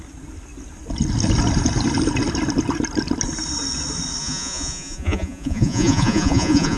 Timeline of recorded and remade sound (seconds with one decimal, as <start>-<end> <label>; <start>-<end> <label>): 0.0-4.2 recorded; 4.2-6.8 remade